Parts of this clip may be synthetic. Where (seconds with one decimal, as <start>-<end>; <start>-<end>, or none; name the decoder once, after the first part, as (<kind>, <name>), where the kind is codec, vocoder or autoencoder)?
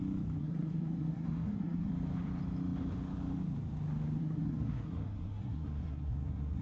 0.4-1.9 (codec, SNAC); 4.2-6.6